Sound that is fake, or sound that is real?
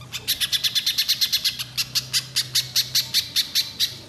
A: real